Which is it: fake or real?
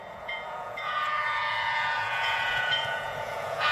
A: fake